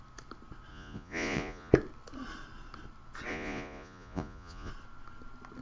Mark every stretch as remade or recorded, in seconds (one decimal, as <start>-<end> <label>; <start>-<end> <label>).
0.0-0.7 recorded; 0.7-1.7 remade; 1.7-3.3 recorded; 3.3-4.7 remade; 4.7-5.6 recorded